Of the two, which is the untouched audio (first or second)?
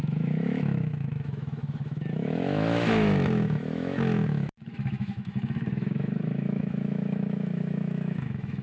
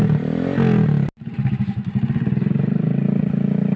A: second